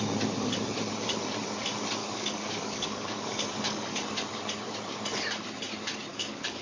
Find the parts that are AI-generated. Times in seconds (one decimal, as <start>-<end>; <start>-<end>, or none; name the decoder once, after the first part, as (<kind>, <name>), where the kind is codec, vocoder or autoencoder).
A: 2.0-4.1 (codec, DAC); 6.1-6.6